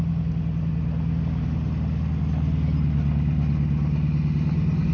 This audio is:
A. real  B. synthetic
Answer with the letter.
A